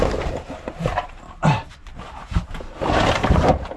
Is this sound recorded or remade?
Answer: remade